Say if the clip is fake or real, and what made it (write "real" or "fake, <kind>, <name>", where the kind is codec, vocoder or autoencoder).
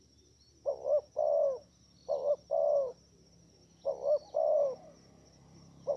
real